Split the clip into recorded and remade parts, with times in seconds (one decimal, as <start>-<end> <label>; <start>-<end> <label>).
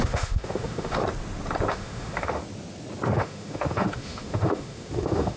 0.0-1.0 remade; 1.0-1.7 recorded; 1.7-2.4 remade; 2.4-3.1 recorded; 3.1-5.4 remade